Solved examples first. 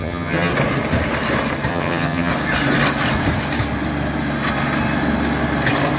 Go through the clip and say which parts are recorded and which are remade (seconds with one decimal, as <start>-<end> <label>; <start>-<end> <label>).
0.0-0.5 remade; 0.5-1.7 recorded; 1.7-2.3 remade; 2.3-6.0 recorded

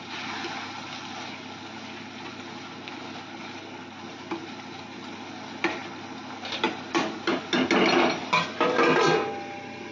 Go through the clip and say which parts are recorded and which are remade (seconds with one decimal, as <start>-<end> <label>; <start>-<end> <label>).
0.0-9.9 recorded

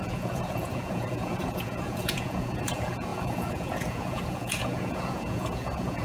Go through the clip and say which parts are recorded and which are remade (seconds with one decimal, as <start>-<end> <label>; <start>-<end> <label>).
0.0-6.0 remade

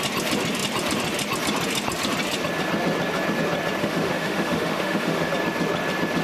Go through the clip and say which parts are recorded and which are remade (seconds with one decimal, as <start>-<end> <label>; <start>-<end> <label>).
0.0-3.8 recorded; 3.8-5.3 remade; 5.3-6.2 recorded

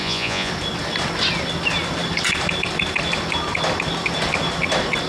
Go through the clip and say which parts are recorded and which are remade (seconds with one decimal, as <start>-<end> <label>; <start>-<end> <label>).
0.0-0.5 remade; 0.5-5.1 recorded